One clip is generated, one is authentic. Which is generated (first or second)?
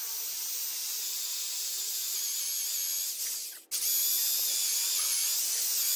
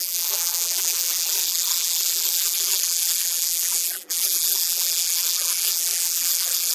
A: second